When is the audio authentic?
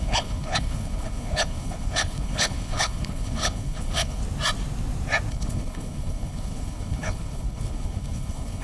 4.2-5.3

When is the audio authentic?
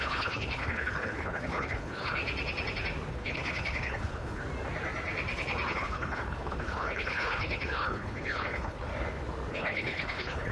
2.2-3.1; 4.4-5.7; 8.9-9.5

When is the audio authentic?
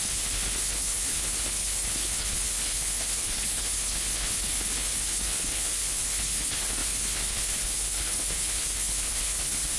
none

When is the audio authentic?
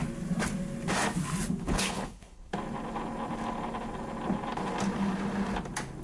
0.0-1.6; 2.5-6.0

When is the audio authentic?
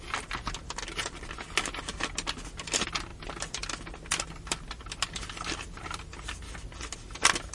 0.0-7.5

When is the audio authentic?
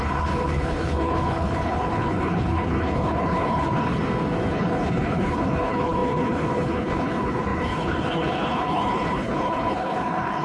4.0-4.5